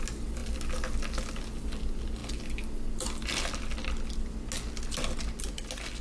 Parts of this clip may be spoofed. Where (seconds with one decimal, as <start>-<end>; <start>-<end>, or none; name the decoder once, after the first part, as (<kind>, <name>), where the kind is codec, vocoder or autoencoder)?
none